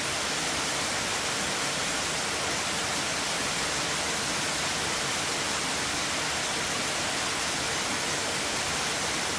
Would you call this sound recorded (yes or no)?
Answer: yes